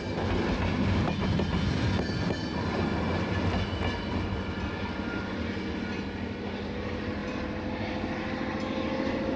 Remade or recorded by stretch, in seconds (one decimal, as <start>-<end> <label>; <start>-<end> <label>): 0.0-9.4 recorded